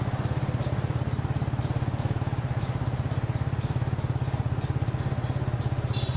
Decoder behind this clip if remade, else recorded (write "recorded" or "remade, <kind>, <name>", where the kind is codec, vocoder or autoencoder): recorded